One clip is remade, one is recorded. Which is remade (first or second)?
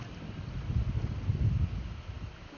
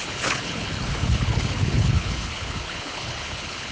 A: second